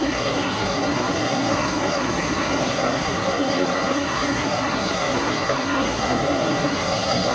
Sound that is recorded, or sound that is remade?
remade